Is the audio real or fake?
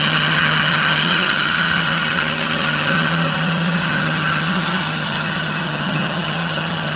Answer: fake